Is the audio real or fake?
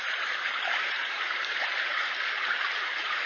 fake